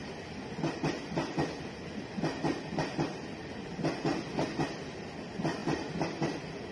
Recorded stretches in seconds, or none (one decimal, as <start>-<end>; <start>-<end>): 0.8-6.7